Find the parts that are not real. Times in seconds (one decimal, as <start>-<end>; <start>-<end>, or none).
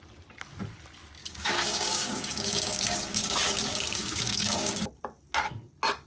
1.2-4.9